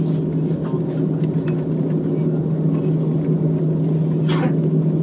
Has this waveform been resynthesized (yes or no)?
no